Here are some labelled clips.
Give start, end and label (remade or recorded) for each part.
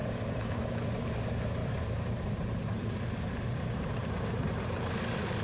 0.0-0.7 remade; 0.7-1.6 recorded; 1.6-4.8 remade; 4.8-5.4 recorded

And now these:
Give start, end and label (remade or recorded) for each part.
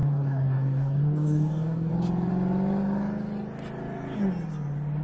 0.0-1.9 remade; 1.9-5.0 recorded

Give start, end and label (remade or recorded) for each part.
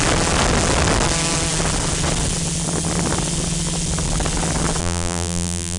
0.0-4.8 recorded; 4.8-5.8 remade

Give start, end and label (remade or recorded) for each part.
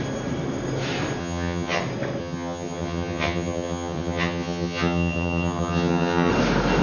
0.0-1.2 recorded; 1.2-1.8 remade; 1.8-2.2 recorded; 2.2-6.3 remade; 6.3-6.8 recorded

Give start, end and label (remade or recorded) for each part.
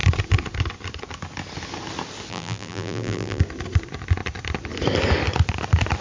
0.0-2.3 recorded; 2.3-3.4 remade; 3.4-6.0 recorded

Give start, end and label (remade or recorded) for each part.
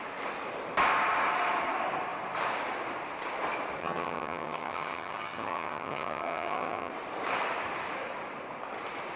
0.0-3.8 recorded; 3.8-6.9 remade; 6.9-9.2 recorded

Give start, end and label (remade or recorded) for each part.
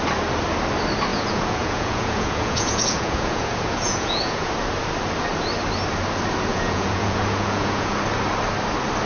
0.0-1.1 recorded; 1.1-4.5 remade; 4.5-6.5 recorded; 6.5-8.0 remade; 8.0-9.1 recorded